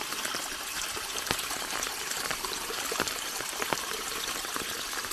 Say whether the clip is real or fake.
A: fake